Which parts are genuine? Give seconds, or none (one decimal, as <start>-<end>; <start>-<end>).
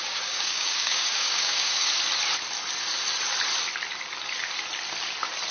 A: 1.9-5.5